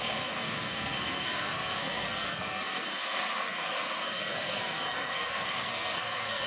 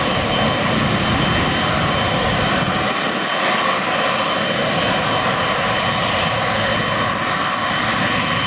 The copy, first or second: first